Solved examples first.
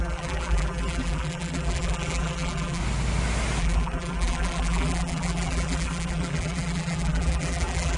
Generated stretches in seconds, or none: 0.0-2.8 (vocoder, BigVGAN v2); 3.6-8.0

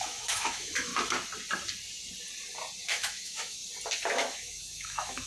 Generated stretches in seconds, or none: 0.0-0.9 (autoencoder, DAC-VAE); 2.8-3.6; 4.1-5.3